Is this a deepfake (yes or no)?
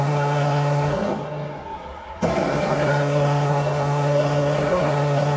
yes